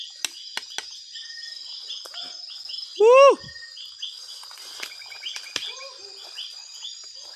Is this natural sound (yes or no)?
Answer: yes